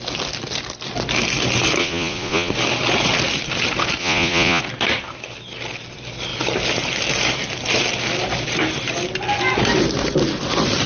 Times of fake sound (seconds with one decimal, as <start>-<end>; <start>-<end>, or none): 1.8-2.5; 4.0-4.6